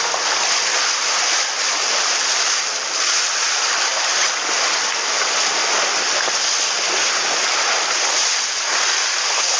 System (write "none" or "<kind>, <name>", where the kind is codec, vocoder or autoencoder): none